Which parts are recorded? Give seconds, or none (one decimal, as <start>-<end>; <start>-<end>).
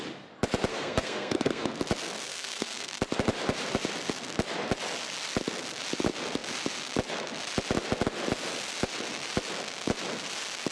0.0-0.7; 1.7-2.3; 2.9-10.7